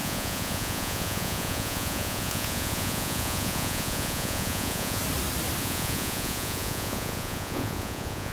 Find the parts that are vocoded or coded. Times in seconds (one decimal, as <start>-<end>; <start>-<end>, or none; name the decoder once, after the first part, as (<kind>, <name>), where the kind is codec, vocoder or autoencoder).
0.0-5.0 (vocoder, Vocos); 5.6-8.3